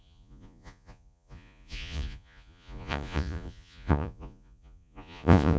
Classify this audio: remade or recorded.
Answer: remade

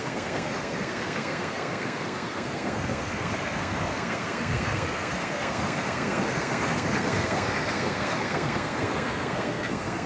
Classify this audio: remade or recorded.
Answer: remade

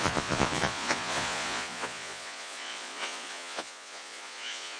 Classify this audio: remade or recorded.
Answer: remade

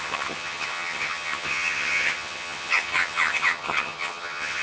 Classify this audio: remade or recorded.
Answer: remade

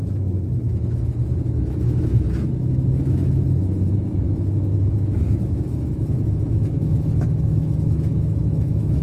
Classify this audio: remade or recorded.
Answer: remade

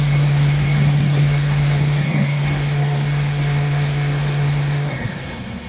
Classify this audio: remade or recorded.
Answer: remade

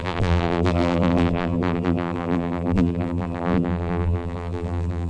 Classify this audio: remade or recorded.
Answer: remade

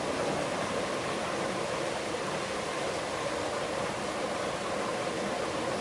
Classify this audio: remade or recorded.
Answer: recorded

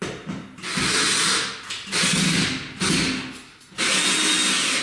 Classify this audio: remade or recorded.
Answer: recorded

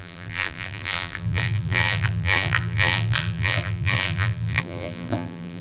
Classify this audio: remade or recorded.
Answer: remade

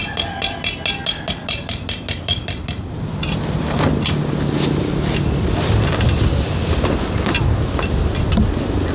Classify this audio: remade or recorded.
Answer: recorded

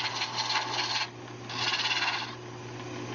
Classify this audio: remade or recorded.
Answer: recorded